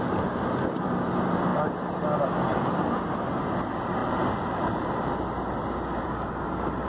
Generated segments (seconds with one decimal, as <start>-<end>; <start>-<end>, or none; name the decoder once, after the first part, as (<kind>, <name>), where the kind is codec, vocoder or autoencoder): 4.0-5.1 (vocoder, BigVGAN v2)